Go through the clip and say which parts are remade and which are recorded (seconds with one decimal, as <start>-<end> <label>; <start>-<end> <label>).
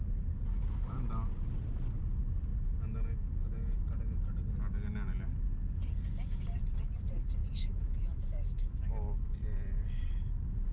0.0-7.4 recorded; 7.4-8.9 remade; 8.9-10.7 recorded